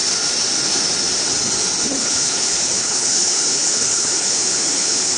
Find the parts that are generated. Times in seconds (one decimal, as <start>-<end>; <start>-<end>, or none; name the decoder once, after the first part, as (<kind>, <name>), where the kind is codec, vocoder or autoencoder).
2.0-5.2 (codec, HILCodec)